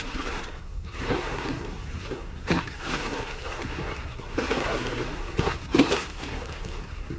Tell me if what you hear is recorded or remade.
remade